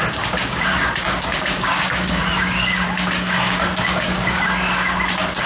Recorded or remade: remade